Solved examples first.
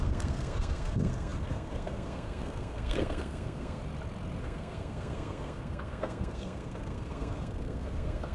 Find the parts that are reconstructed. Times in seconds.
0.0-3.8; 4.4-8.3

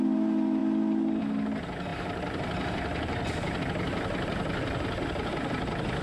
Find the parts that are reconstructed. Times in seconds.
none

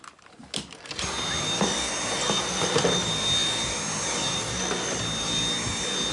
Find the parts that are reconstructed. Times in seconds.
none

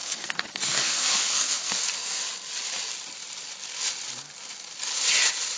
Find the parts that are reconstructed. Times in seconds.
0.0-2.2

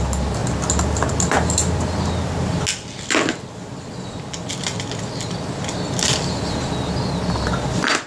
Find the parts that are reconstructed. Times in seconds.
none

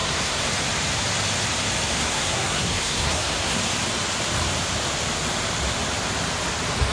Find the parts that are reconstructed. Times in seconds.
0.0-0.5; 2.0-3.6